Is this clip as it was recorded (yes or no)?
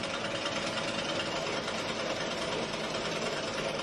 yes